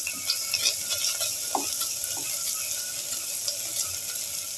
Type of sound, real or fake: real